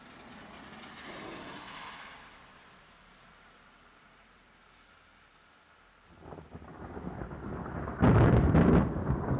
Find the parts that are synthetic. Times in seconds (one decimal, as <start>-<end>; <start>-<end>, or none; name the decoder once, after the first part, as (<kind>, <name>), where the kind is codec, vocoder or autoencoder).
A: none